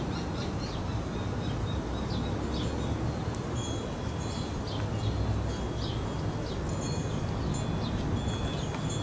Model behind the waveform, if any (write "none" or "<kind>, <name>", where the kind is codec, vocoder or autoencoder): none